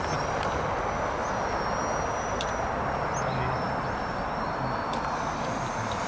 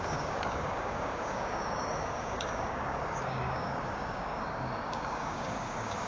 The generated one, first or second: second